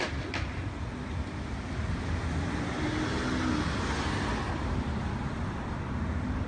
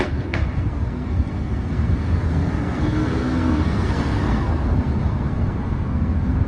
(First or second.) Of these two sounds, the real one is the first